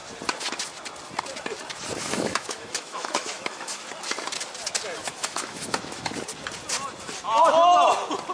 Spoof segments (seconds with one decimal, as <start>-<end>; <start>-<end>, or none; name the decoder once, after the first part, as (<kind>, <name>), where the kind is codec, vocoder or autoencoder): 2.0-3.8 (autoencoder, DAC-VAE); 5.1-6.1